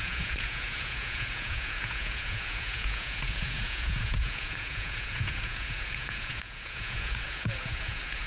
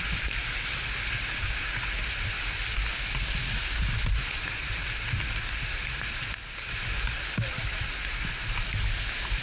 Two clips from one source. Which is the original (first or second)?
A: second